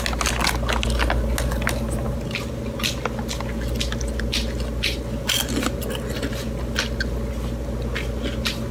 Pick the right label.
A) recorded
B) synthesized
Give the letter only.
A